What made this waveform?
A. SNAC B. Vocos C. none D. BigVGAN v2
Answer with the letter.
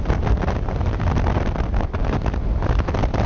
C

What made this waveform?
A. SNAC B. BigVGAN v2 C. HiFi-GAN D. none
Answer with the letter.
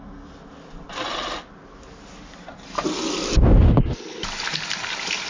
D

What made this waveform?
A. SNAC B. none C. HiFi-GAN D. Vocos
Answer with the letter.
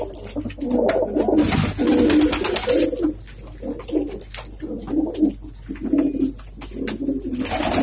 B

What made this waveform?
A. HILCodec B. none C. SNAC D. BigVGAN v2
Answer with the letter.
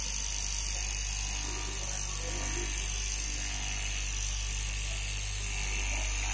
B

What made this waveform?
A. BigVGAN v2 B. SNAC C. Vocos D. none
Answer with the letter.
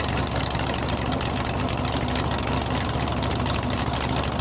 D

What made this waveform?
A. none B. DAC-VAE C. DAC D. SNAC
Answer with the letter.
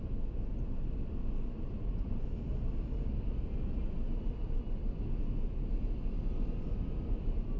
A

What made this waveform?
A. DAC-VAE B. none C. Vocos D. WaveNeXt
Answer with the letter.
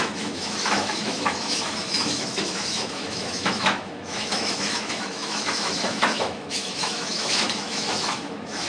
A